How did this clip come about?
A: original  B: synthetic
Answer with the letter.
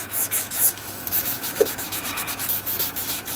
B